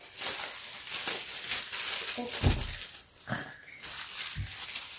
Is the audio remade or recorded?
recorded